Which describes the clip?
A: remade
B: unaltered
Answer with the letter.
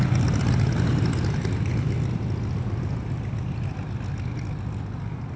B